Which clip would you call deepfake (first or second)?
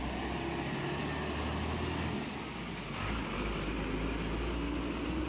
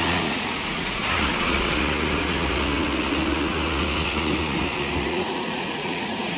second